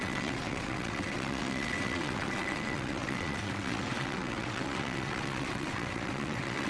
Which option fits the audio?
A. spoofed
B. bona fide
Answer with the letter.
A